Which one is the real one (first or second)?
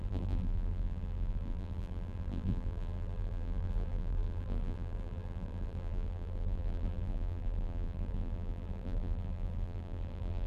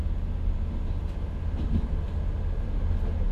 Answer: second